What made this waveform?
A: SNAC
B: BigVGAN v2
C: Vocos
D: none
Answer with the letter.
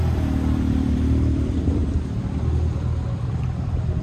B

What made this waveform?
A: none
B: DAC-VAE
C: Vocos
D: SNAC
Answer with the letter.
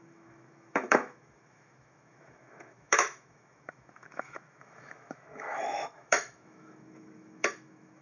B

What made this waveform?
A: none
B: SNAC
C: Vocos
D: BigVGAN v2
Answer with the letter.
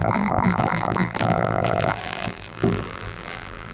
D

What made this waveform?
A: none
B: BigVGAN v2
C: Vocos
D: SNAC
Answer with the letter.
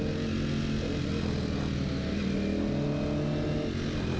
A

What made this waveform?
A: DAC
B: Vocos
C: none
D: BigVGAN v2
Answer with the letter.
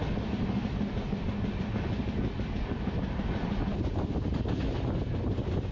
C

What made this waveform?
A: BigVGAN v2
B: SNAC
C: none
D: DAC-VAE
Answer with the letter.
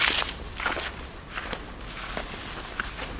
C